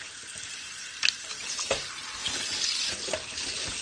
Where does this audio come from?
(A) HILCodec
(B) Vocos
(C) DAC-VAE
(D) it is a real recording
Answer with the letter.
D